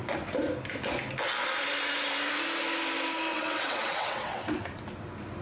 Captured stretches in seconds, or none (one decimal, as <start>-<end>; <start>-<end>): 0.0-3.3; 4.6-5.4